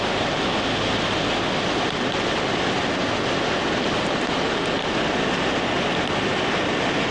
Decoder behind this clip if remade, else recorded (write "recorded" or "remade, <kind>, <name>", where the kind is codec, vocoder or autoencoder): recorded